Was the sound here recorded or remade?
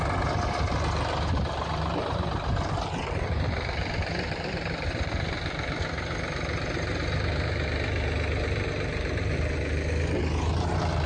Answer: recorded